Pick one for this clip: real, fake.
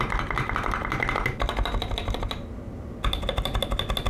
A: real